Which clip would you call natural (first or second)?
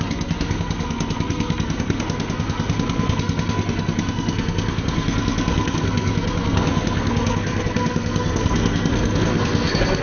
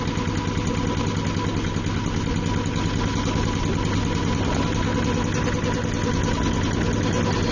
second